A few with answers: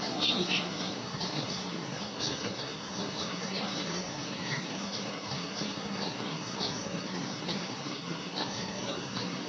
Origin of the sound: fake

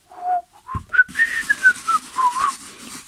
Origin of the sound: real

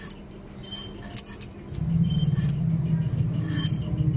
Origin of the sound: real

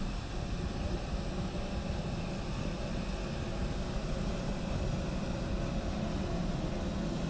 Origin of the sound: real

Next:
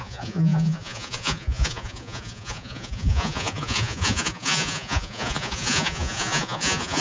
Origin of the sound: fake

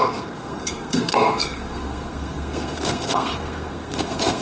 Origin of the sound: fake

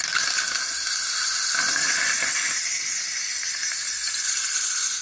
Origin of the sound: real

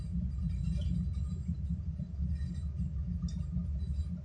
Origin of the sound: real